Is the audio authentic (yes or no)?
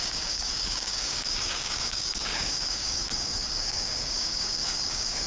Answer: no